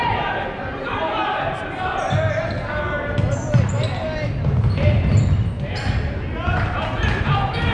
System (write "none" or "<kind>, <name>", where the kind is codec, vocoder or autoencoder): none